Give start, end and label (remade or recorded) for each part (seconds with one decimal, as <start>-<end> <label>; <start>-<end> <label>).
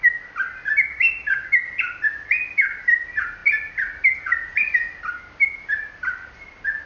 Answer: 0.0-6.9 recorded